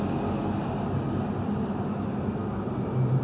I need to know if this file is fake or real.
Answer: real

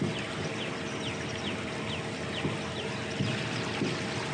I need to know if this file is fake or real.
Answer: real